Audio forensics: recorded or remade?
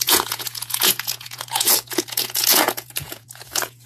remade